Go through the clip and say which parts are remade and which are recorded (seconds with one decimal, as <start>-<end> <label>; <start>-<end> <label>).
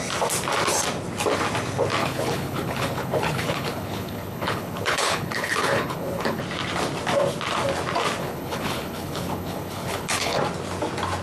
0.0-2.0 recorded; 2.0-6.4 remade; 6.4-8.2 recorded; 8.2-10.4 remade; 10.4-11.2 recorded